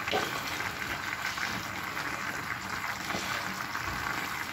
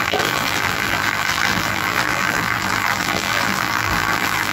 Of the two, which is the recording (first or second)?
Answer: first